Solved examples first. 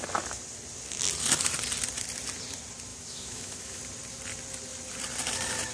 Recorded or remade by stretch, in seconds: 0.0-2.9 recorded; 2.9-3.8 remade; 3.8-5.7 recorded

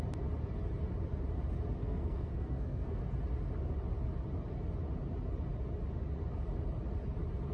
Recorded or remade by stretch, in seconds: 0.0-1.8 recorded; 1.8-3.0 remade; 3.0-7.5 recorded

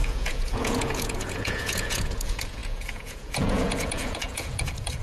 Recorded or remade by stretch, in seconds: 0.0-5.0 remade

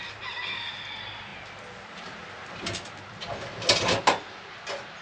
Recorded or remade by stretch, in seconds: 0.0-5.0 recorded

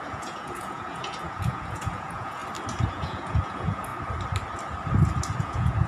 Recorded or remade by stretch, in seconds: 0.0-2.4 remade; 2.4-2.9 recorded; 2.9-3.9 remade; 3.9-5.4 recorded; 5.4-5.9 remade

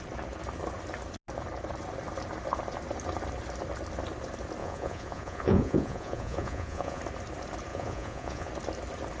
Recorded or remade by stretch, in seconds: 0.0-4.6 recorded; 4.6-7.0 remade; 7.0-7.7 recorded; 7.7-8.5 remade; 8.5-9.2 recorded

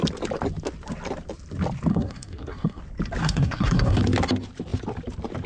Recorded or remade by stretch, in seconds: 0.0-1.9 recorded; 1.9-2.8 remade; 2.8-3.2 recorded; 3.2-4.0 remade; 4.0-5.5 recorded

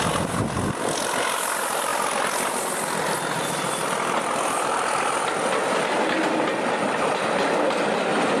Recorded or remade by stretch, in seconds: 0.0-8.4 recorded